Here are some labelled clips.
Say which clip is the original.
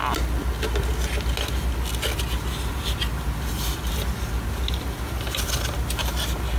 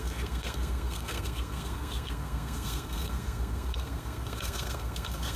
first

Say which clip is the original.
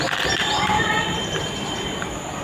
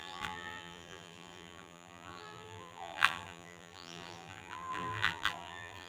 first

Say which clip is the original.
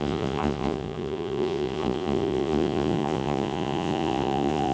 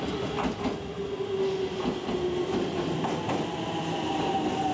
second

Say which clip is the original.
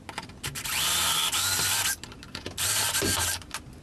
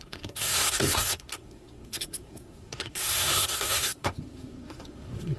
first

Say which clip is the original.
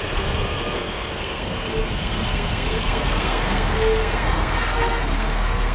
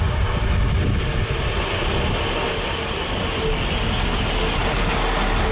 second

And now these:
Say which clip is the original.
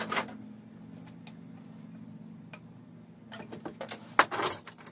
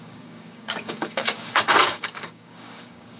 first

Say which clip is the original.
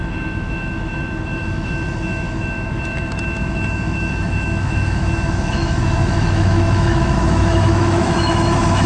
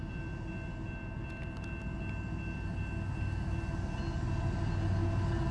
second